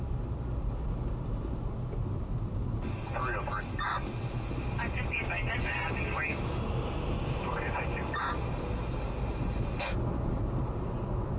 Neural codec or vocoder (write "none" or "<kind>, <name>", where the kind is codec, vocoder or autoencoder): none